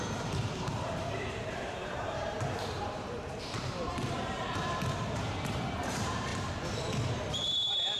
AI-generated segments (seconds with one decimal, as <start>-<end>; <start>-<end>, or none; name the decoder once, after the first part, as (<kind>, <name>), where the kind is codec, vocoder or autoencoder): 0.0-6.3 (vocoder, BigVGAN v2); 7.3-8.0